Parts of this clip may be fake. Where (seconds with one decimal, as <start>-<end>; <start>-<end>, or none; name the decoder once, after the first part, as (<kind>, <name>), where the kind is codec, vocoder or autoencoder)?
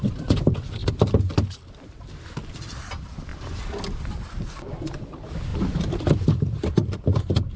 0.0-0.8 (vocoder, BigVGAN v2); 1.8-3.3; 4.0-7.6